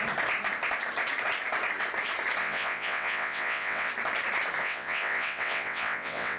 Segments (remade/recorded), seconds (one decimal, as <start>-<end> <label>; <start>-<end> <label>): 0.0-2.4 recorded; 2.4-3.9 remade; 3.9-4.6 recorded; 4.6-6.4 remade